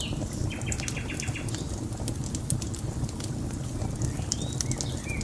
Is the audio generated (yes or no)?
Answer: no